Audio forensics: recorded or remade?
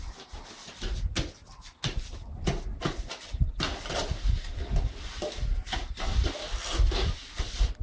recorded